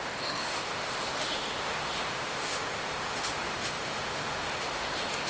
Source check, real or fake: fake